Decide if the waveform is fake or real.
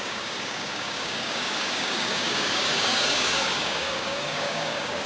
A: fake